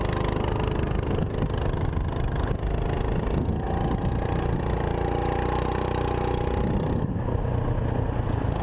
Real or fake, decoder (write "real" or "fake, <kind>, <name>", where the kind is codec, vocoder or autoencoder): real